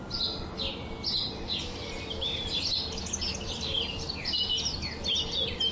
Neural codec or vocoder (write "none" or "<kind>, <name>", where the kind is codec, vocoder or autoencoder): none